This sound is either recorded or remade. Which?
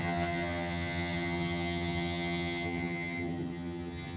remade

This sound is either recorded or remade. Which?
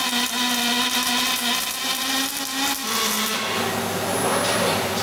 recorded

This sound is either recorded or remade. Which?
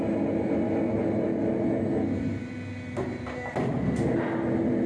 recorded